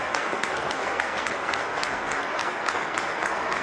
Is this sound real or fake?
fake